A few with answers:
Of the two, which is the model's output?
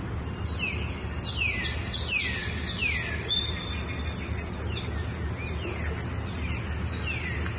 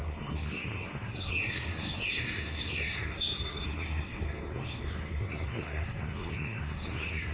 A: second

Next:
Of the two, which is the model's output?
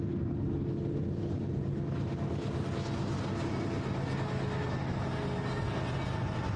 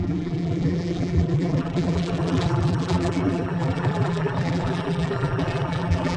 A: second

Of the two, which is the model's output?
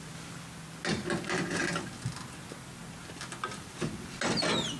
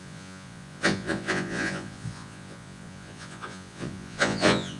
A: second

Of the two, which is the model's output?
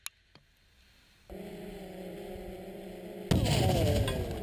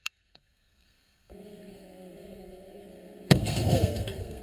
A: second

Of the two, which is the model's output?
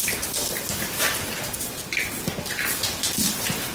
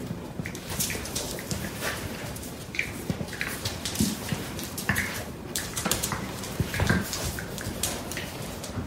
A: second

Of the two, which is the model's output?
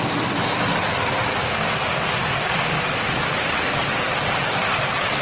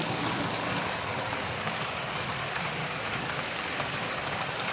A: second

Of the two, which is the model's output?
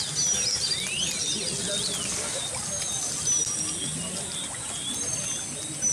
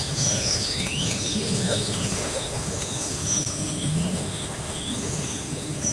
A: second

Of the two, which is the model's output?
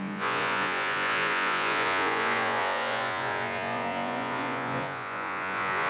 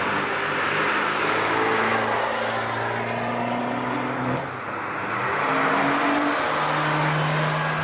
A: first